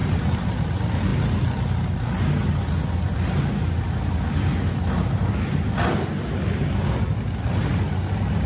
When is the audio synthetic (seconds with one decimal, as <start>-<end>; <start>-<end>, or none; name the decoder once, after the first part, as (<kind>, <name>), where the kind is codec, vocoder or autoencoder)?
0.0-0.7 (vocoder, BigVGAN v2)